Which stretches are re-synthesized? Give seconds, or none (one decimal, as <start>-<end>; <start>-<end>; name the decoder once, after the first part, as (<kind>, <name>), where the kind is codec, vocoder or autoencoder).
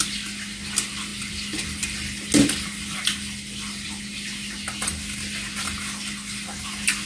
none